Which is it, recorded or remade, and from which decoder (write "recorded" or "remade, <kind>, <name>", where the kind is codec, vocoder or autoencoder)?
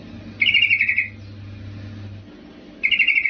recorded